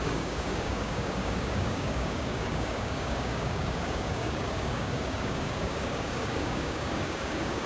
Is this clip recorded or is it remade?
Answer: remade